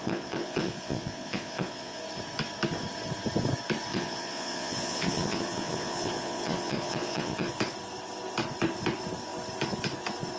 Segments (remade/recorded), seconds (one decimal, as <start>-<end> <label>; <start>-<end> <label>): 0.0-2.0 remade; 2.0-3.9 recorded; 3.9-7.5 remade; 7.5-10.4 recorded